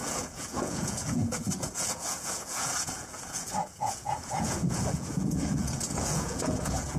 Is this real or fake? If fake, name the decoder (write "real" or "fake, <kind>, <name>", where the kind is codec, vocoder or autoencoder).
fake, vocoder, Vocos